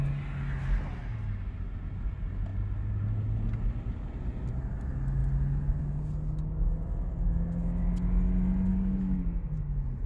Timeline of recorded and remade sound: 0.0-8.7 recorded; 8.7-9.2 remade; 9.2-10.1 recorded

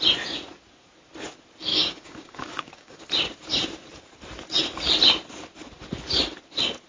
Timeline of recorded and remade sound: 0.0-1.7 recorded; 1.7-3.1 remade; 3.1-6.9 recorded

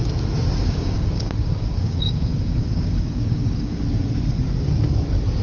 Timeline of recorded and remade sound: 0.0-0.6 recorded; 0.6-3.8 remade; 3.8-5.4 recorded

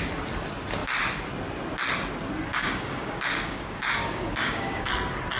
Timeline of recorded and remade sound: 0.0-2.5 recorded; 2.5-4.9 remade; 4.9-5.4 recorded

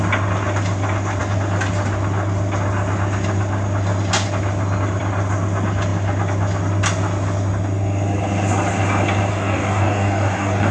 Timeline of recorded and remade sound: 0.0-9.3 recorded; 9.3-10.7 remade